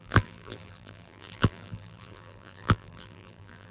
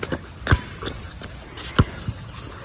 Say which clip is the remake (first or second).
first